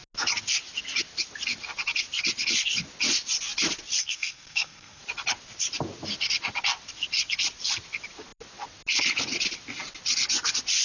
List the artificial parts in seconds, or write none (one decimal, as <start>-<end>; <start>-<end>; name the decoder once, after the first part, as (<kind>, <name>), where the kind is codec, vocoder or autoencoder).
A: 4.0-5.0 (codec, SNAC)